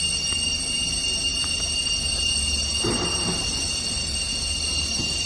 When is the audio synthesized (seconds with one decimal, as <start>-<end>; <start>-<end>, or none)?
none